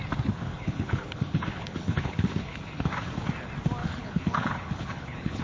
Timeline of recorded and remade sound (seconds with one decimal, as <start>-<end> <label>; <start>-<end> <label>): 0.0-0.5 recorded; 0.5-3.1 remade; 3.1-3.8 recorded; 3.8-5.4 remade